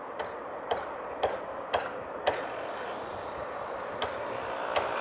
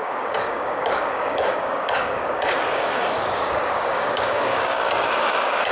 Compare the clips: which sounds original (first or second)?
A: first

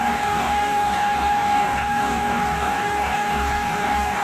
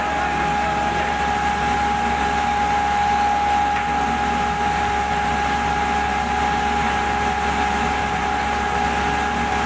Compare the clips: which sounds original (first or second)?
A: second